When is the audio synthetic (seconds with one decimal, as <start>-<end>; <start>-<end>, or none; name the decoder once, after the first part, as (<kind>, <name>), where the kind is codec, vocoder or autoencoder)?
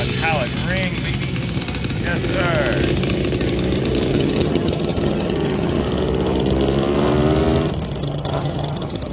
4.1-5.8 (vocoder, HiFi-GAN); 8.0-9.1